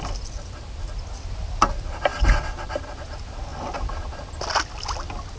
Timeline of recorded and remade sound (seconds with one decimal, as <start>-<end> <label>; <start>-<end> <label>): 0.0-5.4 recorded